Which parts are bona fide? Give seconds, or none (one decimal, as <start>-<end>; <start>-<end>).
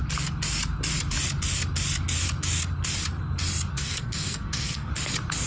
0.0-3.7; 4.9-5.5